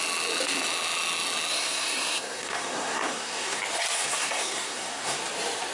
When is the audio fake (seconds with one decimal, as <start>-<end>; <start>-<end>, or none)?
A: 1.5-3.6; 4.0-5.2